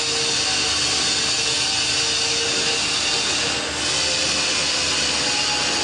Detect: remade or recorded recorded